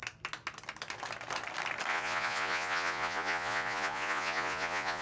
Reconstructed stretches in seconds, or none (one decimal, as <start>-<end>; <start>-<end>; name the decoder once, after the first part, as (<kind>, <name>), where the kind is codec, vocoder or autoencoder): 1.9-5.0 (vocoder, Vocos)